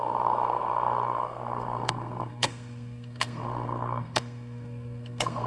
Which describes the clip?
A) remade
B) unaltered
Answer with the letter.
A